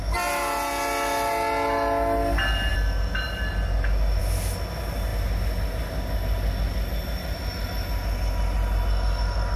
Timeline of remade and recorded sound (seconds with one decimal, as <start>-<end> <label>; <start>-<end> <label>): 0.0-9.6 recorded